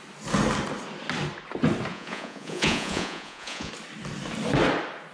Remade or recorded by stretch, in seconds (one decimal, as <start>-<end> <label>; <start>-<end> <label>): 0.0-1.9 recorded; 1.9-3.7 remade; 3.7-5.1 recorded